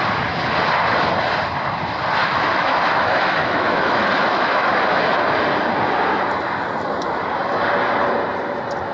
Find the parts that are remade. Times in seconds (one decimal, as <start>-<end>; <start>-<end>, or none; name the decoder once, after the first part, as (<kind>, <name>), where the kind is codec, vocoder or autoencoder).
2.2-4.7 (autoencoder, DAC-VAE)